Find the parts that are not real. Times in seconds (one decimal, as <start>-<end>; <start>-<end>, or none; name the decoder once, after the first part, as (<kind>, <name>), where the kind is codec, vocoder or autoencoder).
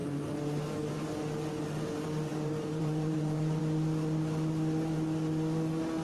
2.3-3.6 (vocoder, BigVGAN v2)